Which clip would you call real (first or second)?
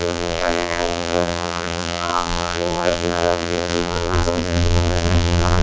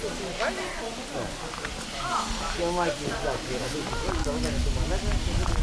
second